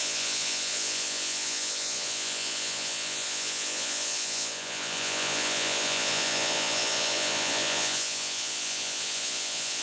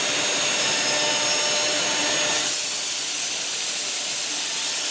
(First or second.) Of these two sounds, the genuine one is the second